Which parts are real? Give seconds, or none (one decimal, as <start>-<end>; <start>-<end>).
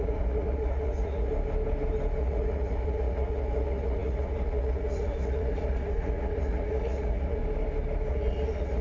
1.3-2.2; 7.4-8.1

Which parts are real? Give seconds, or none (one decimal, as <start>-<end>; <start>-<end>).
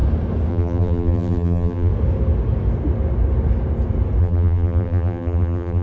0.0-0.5; 1.9-4.2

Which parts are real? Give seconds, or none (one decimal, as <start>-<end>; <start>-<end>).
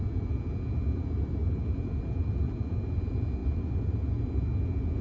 0.0-5.0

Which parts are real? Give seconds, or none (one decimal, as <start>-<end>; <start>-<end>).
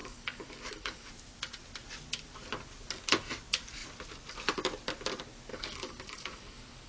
1.1-5.5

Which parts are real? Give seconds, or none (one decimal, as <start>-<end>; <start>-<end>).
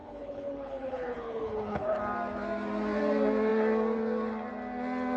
2.0-5.2